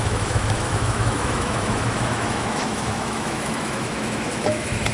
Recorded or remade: remade